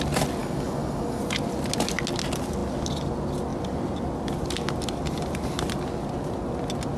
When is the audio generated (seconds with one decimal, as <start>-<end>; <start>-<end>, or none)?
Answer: 0.4-1.2